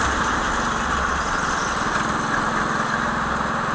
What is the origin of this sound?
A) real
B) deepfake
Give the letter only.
A